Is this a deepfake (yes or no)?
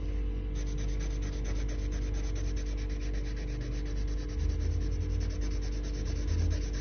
no